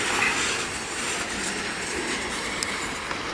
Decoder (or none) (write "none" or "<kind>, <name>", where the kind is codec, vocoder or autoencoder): none